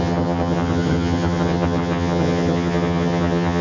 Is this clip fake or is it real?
fake